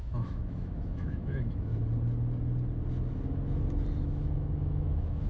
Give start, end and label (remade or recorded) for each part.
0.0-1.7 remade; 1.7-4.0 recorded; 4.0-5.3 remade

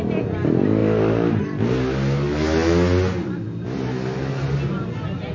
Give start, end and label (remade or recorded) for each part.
0.0-5.3 recorded

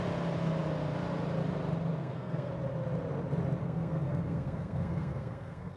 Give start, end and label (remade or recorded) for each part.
0.0-2.0 recorded; 2.0-2.5 remade; 2.5-3.6 recorded; 3.6-5.8 remade

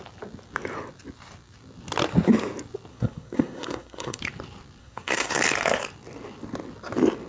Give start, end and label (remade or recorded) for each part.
0.0-2.9 recorded; 2.9-4.2 remade; 4.2-4.8 recorded; 4.8-5.4 remade; 5.4-7.3 recorded

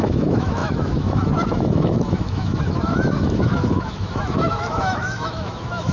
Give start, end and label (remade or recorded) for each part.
0.0-5.9 remade

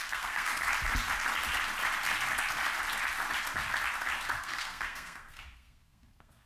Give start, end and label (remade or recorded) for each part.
0.0-0.5 remade; 0.5-4.4 recorded; 4.4-6.5 remade

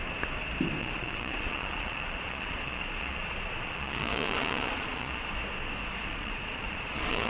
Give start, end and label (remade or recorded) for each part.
0.0-0.8 recorded; 0.8-5.2 remade; 5.2-6.1 recorded; 6.1-7.3 remade